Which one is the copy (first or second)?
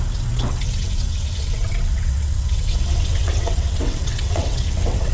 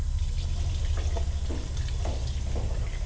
first